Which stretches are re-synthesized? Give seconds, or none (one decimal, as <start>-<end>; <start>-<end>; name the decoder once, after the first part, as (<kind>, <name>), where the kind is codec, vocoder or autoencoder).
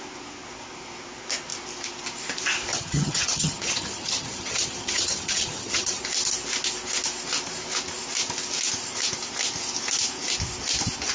2.7-6.0 (vocoder, HiFi-GAN)